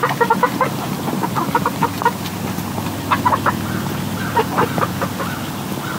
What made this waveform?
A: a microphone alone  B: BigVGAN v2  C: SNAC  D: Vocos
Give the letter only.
A